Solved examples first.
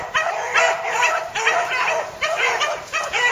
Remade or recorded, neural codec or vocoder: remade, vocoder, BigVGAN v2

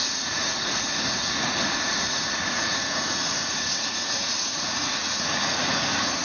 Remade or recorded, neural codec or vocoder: remade, vocoder, Vocos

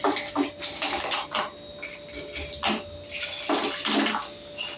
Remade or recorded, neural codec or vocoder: recorded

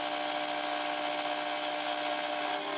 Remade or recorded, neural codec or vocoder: recorded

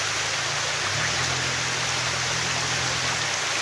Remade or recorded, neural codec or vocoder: recorded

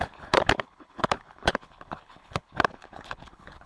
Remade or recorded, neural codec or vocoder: remade, codec, HILCodec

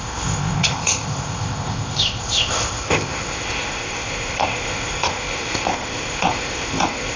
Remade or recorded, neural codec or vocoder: remade, codec, ZipCodec